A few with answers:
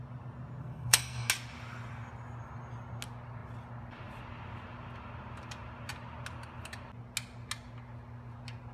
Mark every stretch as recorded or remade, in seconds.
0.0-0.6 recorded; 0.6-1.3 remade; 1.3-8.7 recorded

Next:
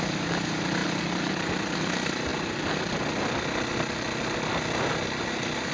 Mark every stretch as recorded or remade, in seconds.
0.0-5.7 recorded

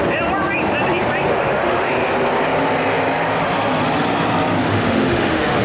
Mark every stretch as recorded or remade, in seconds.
0.0-1.3 recorded; 1.3-1.9 remade; 1.9-4.7 recorded; 4.7-5.6 remade

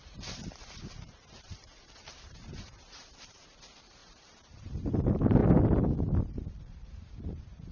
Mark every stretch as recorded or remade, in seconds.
0.0-5.4 remade; 5.4-6.2 recorded; 6.2-7.7 remade

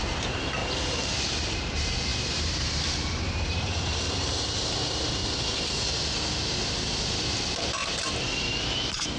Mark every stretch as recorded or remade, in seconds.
0.0-5.2 remade; 5.2-7.2 recorded; 7.2-7.8 remade; 7.8-8.4 recorded; 8.4-9.2 remade

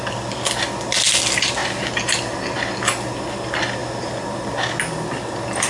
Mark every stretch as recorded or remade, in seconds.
0.0-5.7 recorded

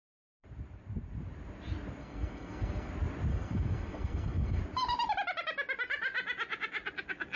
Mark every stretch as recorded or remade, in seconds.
0.0-2.0 recorded; 2.0-2.9 remade; 2.9-3.3 recorded; 3.3-4.6 remade; 4.6-7.4 recorded